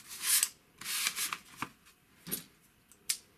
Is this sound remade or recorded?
recorded